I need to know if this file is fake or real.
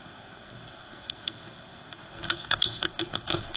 fake